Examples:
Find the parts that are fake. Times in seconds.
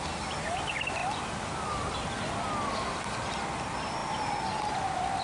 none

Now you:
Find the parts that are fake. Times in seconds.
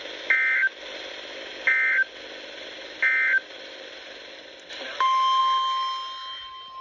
none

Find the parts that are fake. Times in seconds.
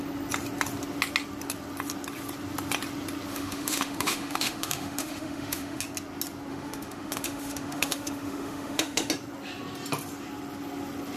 3.3-5.8; 6.5-9.1